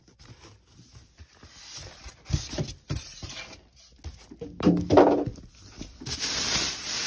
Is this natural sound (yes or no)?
yes